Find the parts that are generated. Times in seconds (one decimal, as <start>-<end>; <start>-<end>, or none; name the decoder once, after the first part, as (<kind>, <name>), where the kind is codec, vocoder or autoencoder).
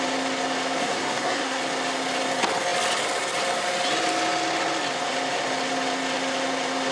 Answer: 0.8-1.6 (codec, SNAC)